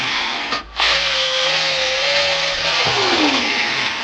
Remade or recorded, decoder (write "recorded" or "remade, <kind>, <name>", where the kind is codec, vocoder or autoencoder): remade, codec, SNAC